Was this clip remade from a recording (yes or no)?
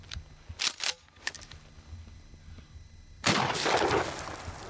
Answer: no